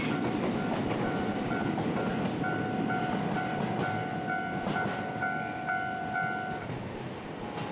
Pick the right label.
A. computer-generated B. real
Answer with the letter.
A